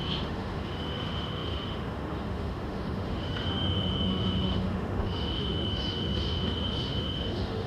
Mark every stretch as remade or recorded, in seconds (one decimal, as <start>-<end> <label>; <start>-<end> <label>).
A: 0.0-7.7 remade